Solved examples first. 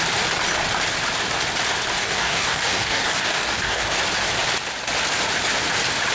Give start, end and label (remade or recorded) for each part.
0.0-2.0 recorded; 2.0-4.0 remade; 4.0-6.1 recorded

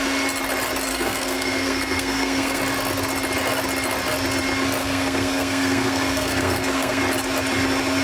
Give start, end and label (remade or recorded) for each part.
0.0-0.9 recorded; 0.9-2.6 remade; 2.6-4.8 recorded; 4.8-7.0 remade; 7.0-8.0 recorded